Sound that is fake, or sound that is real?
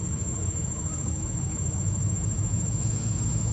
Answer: fake